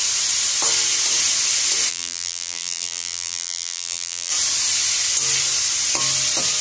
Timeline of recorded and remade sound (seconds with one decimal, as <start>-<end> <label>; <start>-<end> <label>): 0.0-1.9 recorded; 1.9-4.3 remade; 4.3-6.6 recorded